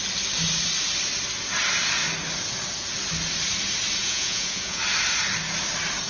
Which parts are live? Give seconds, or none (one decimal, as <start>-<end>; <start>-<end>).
0.0-4.0; 4.8-6.1